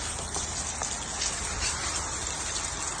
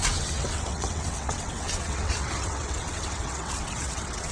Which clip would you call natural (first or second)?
first